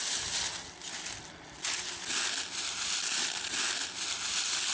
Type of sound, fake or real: real